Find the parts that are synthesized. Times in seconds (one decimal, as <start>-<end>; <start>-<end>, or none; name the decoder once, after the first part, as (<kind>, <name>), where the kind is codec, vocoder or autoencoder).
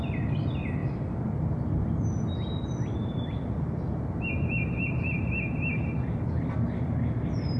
none